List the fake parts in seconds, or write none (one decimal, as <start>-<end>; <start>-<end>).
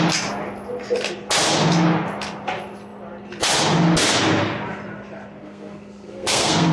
5.4-6.7